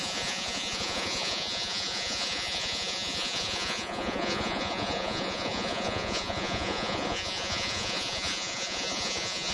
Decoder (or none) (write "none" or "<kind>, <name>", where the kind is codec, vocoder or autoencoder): vocoder, Vocos